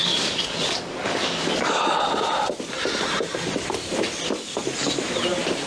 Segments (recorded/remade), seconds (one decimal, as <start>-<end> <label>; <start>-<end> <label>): 0.0-2.0 remade; 2.0-5.7 recorded

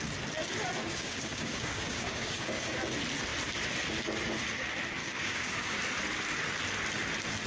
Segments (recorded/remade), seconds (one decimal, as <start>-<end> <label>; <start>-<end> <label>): 0.0-0.8 recorded; 0.8-2.7 remade; 2.7-5.0 recorded; 5.0-5.8 remade; 5.8-7.5 recorded